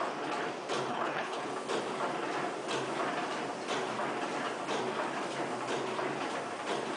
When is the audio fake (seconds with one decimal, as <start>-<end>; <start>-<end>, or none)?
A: 0.9-1.5